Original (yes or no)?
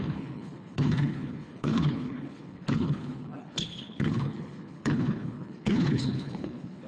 no